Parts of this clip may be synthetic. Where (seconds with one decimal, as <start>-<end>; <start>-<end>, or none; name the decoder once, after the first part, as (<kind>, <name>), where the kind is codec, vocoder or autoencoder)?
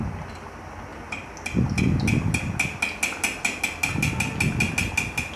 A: none